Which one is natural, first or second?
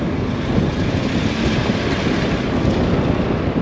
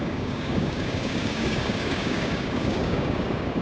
first